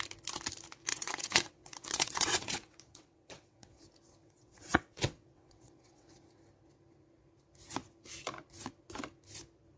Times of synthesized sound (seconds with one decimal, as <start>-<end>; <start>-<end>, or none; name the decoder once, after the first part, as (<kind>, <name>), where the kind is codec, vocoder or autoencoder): 0.9-3.8 (vocoder, WaveNeXt); 4.2-6.1